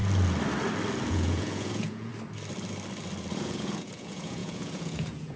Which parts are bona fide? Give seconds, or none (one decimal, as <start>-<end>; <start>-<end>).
0.0-1.1; 2.1-3.4